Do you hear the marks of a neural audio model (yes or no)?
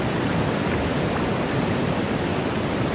no